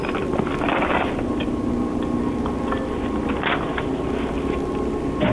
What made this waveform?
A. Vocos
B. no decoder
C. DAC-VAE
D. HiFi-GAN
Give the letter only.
B